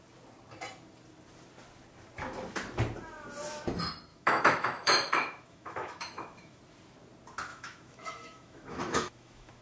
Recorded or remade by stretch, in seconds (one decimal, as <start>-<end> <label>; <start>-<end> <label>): 0.0-4.1 recorded; 4.1-6.6 remade; 6.6-7.5 recorded; 7.5-9.6 remade